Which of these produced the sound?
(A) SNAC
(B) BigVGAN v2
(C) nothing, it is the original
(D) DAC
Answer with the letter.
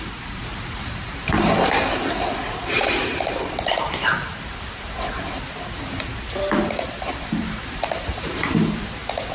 B